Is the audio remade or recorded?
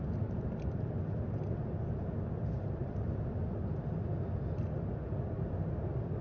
recorded